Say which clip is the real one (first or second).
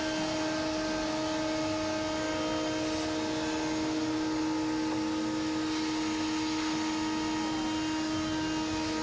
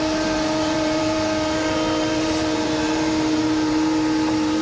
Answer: first